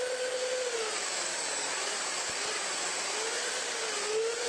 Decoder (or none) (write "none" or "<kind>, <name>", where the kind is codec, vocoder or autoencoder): none